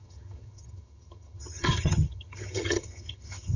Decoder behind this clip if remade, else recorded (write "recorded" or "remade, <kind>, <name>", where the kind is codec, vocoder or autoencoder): remade, vocoder, HiFi-GAN